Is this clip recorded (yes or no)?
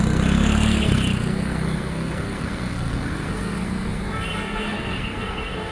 no